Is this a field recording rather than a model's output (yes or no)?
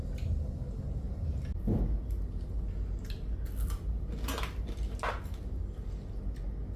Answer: yes